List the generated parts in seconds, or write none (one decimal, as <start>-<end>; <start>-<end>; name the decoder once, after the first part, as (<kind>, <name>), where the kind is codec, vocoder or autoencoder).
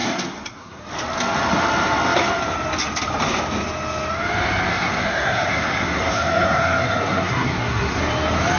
0.0-0.8 (codec, SNAC); 4.7-8.0